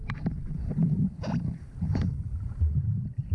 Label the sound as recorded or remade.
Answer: recorded